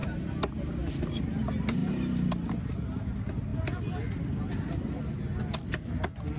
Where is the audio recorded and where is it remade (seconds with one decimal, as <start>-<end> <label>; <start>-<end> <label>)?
0.0-6.4 recorded